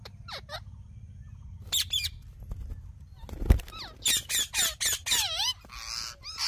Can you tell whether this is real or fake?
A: real